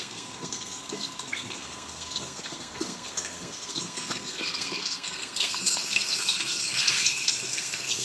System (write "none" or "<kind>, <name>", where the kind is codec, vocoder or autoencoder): codec, SNAC